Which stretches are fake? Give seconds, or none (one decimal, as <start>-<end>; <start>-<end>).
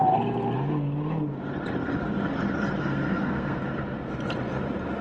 2.8-3.6